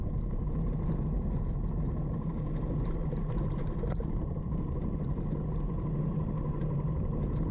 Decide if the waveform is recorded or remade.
recorded